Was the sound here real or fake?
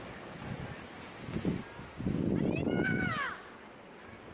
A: real